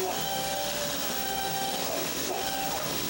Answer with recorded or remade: remade